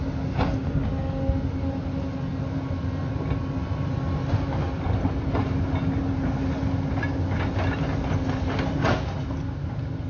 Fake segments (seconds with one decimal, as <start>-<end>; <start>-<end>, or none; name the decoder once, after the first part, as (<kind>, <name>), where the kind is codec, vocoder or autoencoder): none

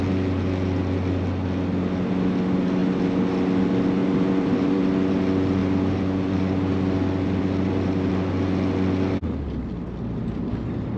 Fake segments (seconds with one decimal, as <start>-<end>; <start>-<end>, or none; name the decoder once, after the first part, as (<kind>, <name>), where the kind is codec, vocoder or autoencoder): 4.0-5.1 (vocoder, BigVGAN v2); 5.6-8.1

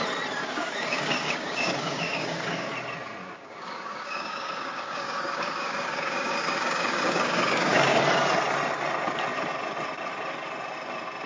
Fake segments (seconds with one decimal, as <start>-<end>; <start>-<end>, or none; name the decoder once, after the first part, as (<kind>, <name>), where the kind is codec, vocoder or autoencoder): 0.4-2.7 (codec, DAC); 3.2-8.0